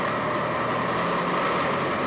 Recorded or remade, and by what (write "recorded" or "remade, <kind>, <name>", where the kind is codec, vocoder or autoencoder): recorded